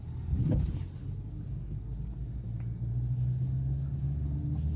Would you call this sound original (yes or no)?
yes